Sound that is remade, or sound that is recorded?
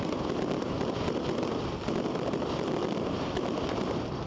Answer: remade